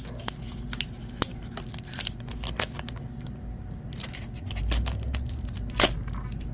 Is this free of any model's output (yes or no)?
yes